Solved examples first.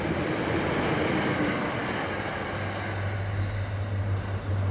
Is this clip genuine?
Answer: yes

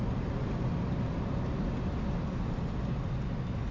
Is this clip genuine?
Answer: yes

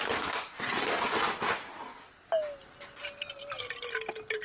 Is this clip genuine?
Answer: yes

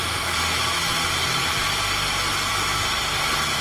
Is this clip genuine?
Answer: yes